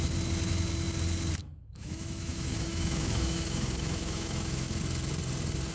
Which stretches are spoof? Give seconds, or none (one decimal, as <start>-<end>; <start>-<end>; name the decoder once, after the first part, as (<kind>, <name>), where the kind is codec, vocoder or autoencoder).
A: 1.4-4.8 (autoencoder, DAC-VAE)